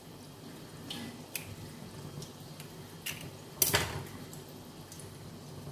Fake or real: real